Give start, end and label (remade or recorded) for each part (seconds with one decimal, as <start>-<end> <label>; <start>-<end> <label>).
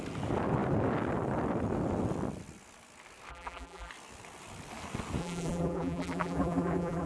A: 0.0-3.3 recorded; 3.3-3.9 remade; 3.9-5.2 recorded; 5.2-7.1 remade